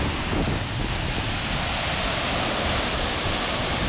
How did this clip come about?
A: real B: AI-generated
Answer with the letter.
A